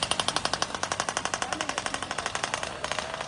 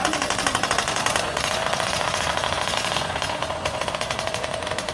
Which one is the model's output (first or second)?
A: second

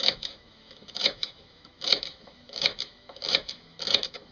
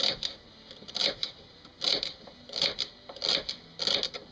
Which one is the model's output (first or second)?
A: first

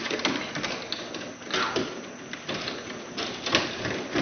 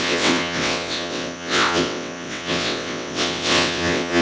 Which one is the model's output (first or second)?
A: second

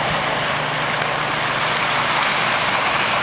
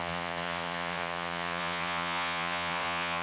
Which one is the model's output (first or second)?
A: second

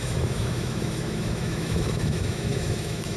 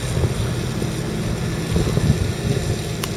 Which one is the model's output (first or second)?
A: first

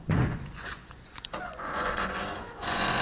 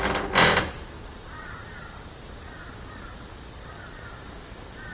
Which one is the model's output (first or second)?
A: first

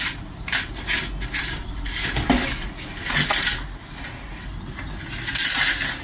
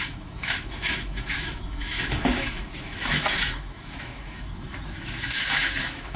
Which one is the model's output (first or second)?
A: second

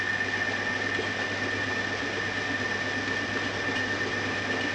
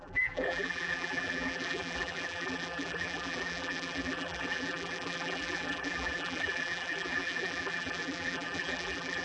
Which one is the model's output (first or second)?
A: second